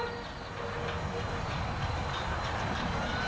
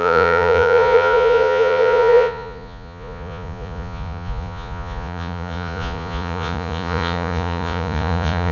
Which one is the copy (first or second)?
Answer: second